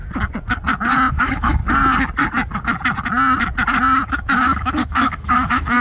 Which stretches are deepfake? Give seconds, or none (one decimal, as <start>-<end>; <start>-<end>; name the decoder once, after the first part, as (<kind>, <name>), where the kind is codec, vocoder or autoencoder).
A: 1.1-1.6 (autoencoder, DAC-VAE); 4.1-5.8